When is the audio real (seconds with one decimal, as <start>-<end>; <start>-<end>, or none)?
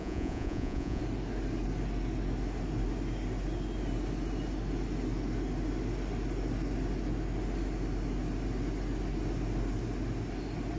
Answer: 1.0-10.8